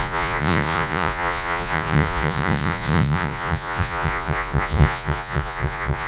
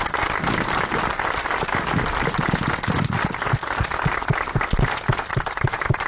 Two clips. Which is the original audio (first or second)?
second